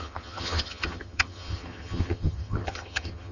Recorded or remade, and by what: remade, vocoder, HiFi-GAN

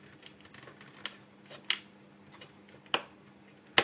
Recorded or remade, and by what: recorded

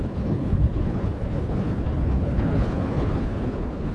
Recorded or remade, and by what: remade, codec, HILCodec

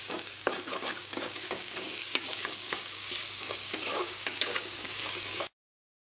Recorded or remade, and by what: remade, codec, DAC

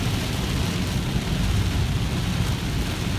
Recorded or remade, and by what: recorded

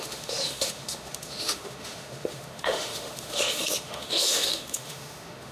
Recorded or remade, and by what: remade, autoencoder, DAC-VAE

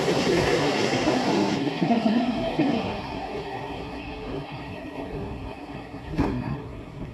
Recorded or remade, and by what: remade, codec, SNAC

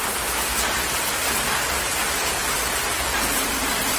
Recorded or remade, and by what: recorded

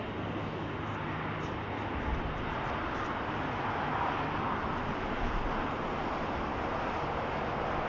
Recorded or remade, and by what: recorded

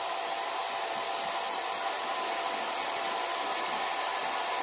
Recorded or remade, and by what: recorded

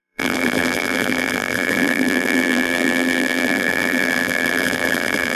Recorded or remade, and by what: remade, vocoder, BigVGAN v2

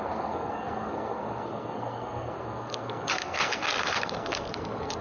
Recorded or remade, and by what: remade, codec, SNAC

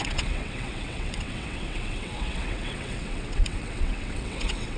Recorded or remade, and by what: remade, vocoder, WaveNeXt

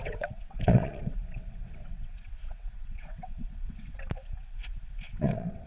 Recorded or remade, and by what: remade, vocoder, WaveNeXt